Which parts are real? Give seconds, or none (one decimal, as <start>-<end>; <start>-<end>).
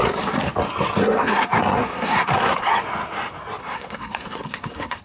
0.0-1.0; 2.7-3.6